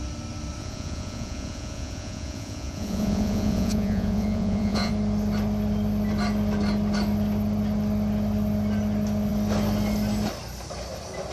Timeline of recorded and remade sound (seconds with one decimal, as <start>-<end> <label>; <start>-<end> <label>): 0.0-0.6 recorded; 0.6-4.9 remade; 4.9-11.3 recorded